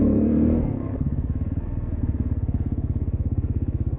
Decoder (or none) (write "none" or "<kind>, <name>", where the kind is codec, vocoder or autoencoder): codec, SNAC